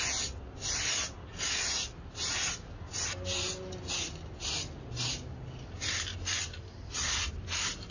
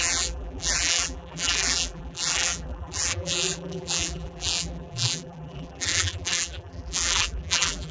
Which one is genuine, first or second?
first